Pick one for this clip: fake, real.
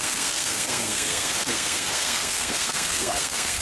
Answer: fake